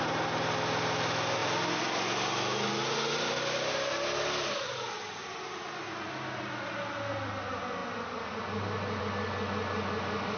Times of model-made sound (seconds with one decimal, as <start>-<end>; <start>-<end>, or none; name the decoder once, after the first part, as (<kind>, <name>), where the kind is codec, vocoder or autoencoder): none